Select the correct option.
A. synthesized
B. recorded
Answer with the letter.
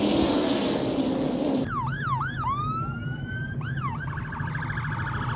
B